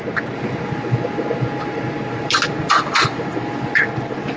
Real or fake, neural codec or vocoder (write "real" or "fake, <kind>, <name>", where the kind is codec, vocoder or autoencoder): real